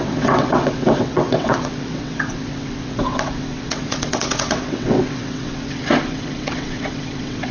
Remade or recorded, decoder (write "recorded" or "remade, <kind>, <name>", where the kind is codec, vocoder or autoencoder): remade, vocoder, WaveNeXt